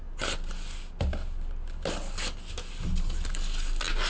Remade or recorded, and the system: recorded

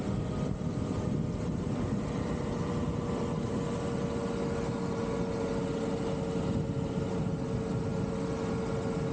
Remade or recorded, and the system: recorded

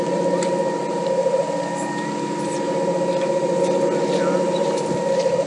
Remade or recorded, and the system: recorded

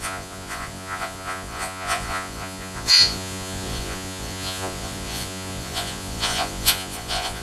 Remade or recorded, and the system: remade, vocoder, Vocos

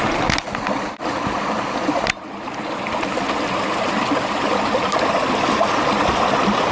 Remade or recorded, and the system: recorded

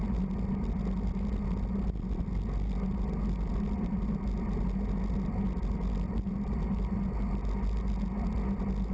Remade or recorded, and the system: recorded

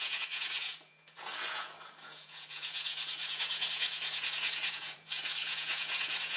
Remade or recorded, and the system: remade, vocoder, Vocos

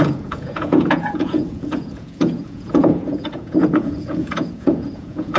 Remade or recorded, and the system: remade, vocoder, Vocos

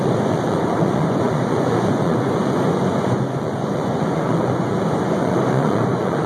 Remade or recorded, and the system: remade, vocoder, Vocos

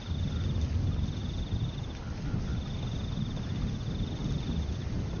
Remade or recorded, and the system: recorded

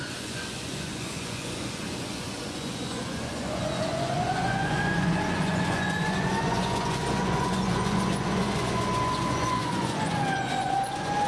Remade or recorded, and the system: remade, vocoder, Vocos